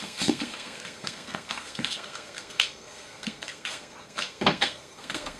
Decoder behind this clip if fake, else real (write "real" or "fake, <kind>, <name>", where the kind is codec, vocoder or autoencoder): fake, codec, SNAC